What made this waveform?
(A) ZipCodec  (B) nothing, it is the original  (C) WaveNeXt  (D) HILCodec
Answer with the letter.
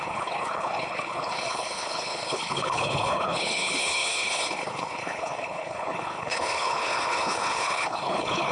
D